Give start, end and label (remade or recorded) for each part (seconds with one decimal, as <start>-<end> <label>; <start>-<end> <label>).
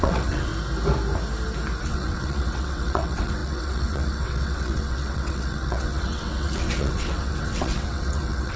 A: 0.0-0.5 remade; 0.5-1.8 recorded; 1.8-8.6 remade